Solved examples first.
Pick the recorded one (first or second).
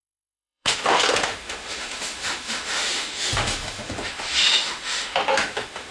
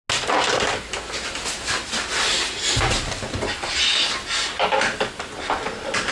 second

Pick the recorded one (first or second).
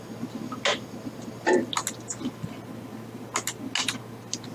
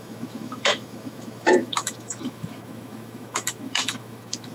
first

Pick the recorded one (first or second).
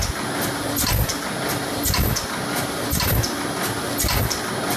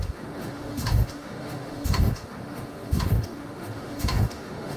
first